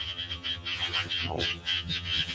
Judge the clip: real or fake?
fake